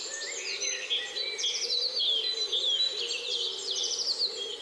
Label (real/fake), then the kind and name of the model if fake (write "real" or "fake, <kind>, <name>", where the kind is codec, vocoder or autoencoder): real